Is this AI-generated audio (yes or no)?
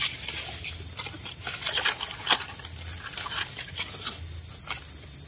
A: no